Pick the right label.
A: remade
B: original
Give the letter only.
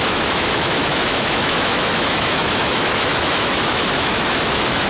A